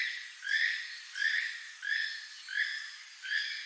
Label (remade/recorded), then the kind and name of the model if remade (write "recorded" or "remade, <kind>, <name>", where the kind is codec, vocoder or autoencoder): recorded